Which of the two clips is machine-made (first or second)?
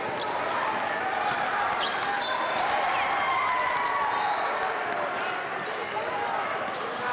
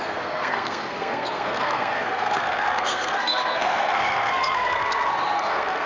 second